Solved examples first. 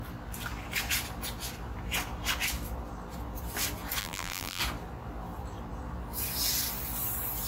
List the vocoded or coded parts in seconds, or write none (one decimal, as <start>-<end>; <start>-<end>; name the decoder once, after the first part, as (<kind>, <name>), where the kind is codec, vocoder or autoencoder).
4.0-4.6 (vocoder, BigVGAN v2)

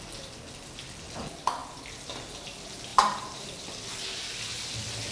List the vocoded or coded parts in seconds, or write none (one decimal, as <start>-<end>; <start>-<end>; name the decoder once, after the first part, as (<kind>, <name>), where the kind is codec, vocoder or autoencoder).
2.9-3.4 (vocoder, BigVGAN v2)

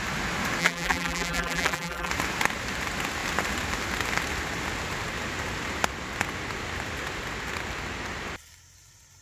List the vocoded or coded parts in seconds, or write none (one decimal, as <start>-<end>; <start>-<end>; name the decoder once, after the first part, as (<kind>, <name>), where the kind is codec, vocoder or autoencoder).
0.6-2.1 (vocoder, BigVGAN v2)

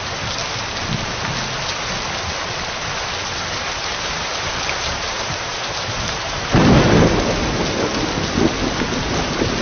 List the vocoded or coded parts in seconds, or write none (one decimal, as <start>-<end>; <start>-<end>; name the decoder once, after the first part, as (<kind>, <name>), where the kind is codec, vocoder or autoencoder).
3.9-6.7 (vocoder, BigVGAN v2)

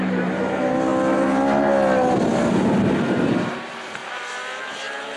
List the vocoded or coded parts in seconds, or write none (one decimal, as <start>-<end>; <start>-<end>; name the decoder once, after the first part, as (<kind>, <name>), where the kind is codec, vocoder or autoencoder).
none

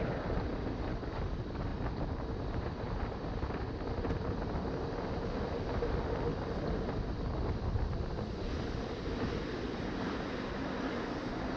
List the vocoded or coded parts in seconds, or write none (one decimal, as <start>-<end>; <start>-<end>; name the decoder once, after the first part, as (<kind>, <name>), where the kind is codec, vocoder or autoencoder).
6.3-10.0 (vocoder, BigVGAN v2)